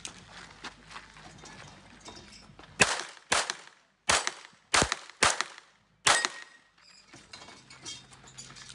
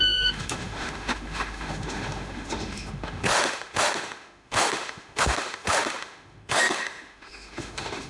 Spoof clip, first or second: second